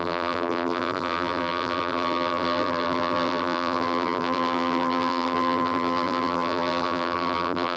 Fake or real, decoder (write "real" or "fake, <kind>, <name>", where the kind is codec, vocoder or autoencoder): fake, vocoder, BigVGAN v2